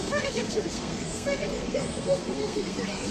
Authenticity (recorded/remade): remade